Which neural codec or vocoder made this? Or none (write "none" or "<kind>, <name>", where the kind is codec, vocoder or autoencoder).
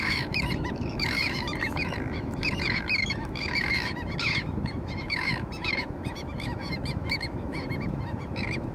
autoencoder, DAC-VAE